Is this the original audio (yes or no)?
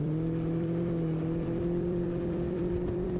no